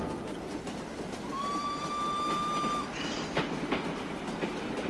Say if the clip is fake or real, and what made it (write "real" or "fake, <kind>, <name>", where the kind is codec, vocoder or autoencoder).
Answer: real